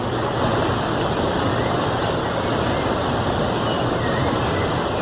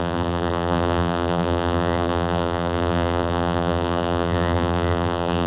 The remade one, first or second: second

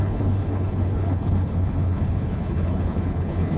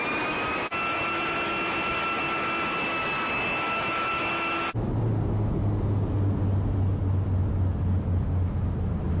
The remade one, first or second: first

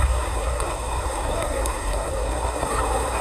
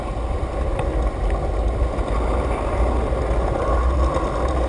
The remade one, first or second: first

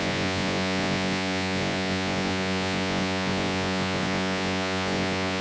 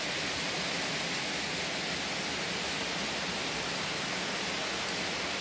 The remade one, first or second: first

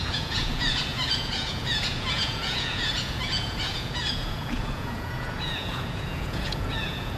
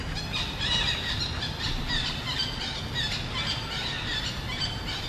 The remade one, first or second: first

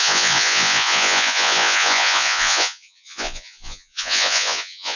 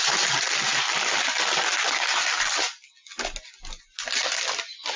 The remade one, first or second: first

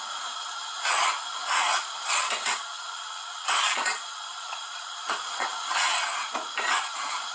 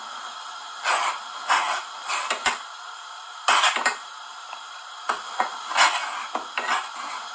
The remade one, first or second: first